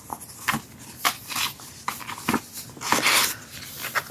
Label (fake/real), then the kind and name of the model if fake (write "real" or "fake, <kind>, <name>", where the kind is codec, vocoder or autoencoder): real